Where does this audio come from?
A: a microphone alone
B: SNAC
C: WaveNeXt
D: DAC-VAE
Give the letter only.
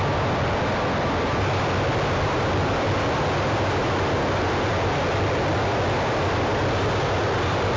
A